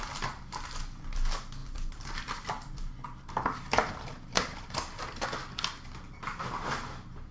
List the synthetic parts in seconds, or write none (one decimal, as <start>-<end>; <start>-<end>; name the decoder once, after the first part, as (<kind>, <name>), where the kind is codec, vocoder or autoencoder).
none